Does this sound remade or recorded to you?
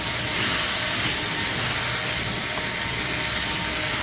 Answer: recorded